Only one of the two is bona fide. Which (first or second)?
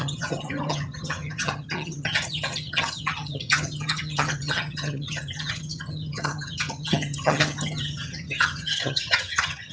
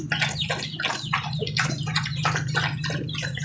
second